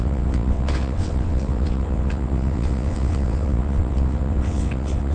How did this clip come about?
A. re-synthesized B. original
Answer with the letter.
A